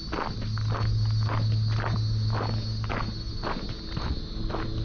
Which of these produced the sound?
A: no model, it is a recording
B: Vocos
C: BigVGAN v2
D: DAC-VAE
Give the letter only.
A